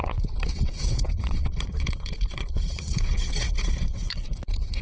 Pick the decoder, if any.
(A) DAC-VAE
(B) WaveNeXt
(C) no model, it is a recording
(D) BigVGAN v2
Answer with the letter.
B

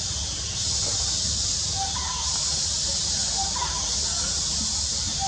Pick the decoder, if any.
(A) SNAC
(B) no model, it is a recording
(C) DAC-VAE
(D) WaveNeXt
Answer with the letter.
B